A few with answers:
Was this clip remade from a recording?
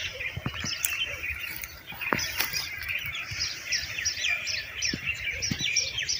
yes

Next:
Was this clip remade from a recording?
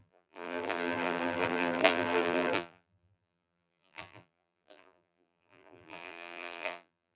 yes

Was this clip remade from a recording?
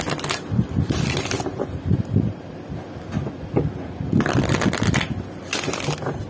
no